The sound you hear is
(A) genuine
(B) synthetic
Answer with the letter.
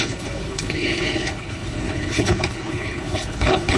B